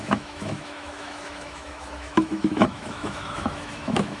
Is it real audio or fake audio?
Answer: fake